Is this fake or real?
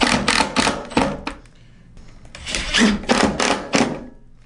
real